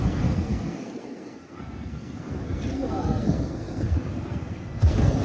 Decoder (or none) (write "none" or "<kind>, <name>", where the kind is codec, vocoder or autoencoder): codec, SNAC